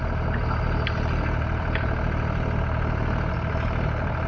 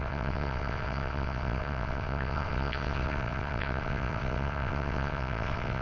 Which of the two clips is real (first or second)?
first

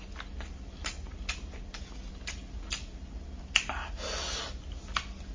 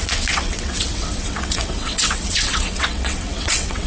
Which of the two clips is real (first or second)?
first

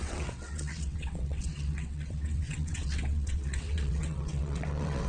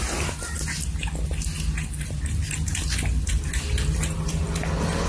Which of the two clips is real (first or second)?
second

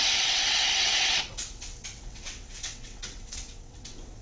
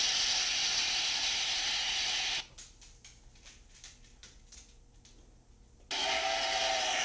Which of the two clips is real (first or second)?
second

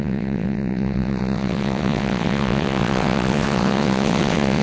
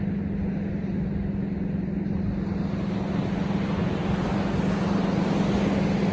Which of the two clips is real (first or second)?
second